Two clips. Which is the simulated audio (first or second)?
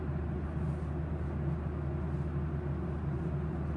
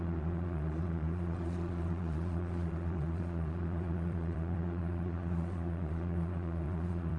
second